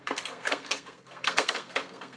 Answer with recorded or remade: remade